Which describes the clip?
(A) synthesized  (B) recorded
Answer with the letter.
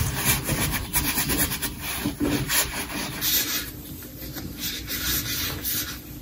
A